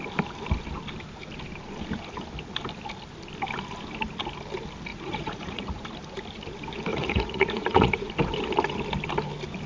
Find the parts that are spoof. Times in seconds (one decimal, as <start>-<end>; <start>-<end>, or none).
4.9-5.8; 6.9-8.1